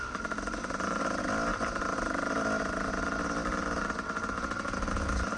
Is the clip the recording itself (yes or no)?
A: yes